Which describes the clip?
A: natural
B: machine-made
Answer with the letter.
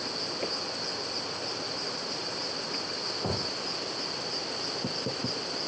A